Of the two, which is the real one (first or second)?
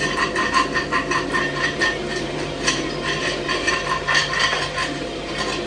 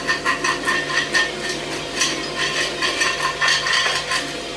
second